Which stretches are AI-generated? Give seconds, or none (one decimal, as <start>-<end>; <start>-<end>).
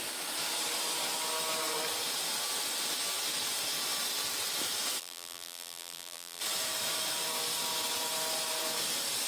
5.0-6.4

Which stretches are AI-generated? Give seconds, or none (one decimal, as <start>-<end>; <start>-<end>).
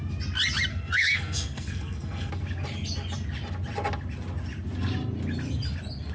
0.7-2.3